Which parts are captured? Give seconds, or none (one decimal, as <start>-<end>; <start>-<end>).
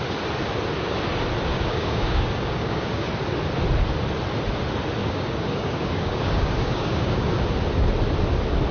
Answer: 0.0-1.5; 3.1-5.0; 7.3-8.7